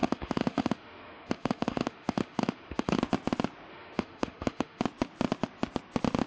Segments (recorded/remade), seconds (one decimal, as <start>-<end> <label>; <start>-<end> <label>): 0.0-3.0 remade; 3.0-3.7 recorded; 3.7-4.8 remade; 4.8-6.3 recorded